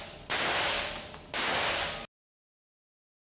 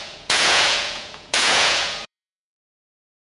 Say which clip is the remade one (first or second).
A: second